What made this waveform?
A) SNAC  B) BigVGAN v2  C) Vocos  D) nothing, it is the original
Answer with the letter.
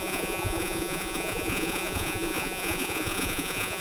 C